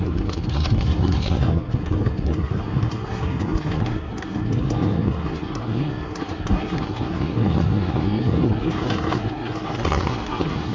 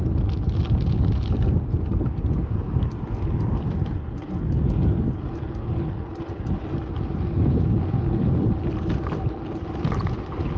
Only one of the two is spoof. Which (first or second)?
first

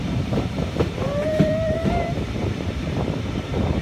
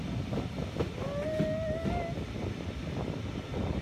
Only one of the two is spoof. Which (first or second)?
first